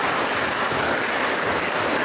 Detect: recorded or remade recorded